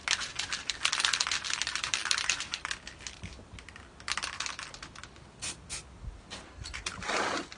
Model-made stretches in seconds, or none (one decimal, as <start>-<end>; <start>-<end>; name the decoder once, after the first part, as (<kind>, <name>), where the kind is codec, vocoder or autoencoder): 0.0-1.0 (vocoder, BigVGAN v2); 2.0-2.8